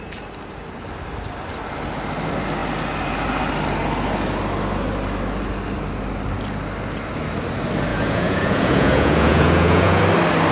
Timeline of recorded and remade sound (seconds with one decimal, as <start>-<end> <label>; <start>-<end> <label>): 0.0-7.9 recorded; 7.9-10.0 remade; 10.0-10.5 recorded